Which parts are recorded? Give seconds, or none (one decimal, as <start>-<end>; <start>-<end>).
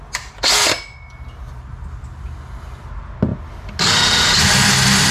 0.0-5.1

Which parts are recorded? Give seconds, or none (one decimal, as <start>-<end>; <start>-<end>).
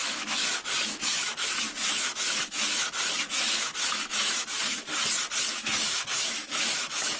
4.9-5.5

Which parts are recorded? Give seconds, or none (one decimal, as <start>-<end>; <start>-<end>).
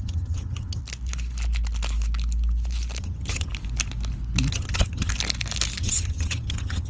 0.8-3.0; 3.5-4.5; 5.1-5.8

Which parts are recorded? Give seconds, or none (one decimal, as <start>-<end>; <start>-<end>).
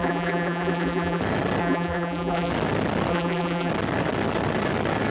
1.2-1.6; 2.5-3.1; 3.7-5.1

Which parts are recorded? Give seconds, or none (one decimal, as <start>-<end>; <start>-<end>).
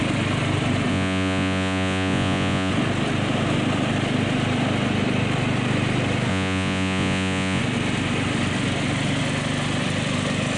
0.0-0.9; 2.7-6.3; 7.6-10.6